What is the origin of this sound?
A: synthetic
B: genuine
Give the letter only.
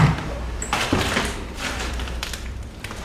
A